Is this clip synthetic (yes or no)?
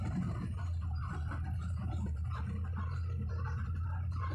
no